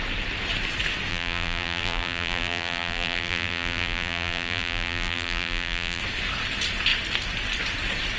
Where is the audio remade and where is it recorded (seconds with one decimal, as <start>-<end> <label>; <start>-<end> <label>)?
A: 0.0-1.1 recorded; 1.1-6.0 remade; 6.0-8.2 recorded